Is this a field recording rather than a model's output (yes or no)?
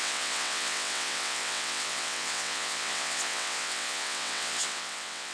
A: no